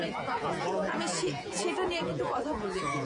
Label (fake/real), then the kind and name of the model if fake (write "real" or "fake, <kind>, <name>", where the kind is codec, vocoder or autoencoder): fake, vocoder, Vocos